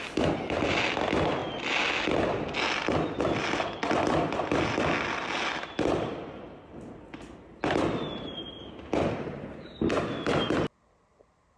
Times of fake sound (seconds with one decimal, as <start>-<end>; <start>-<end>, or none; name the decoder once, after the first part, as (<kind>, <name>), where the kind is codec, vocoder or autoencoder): none